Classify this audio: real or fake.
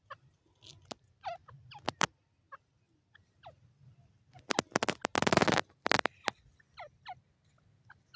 real